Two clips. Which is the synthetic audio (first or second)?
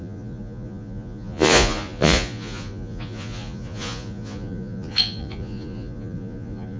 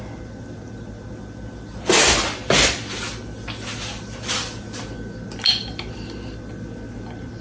first